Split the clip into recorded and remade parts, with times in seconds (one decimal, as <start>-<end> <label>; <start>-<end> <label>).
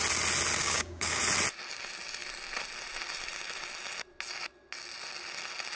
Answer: 0.0-0.6 recorded; 0.6-1.2 remade; 1.2-5.8 recorded